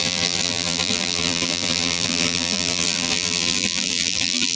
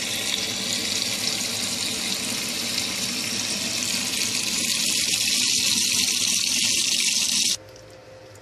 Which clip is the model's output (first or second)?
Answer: first